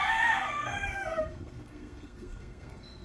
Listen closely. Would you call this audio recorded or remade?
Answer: remade